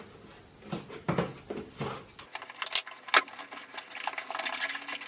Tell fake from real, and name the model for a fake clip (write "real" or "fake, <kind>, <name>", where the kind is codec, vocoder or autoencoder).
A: real